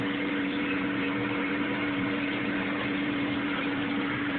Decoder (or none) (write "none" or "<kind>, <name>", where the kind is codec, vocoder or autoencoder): vocoder, BigVGAN v2